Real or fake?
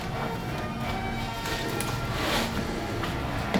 real